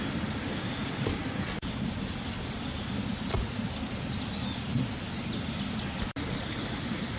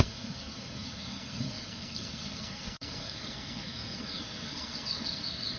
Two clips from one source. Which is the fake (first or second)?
second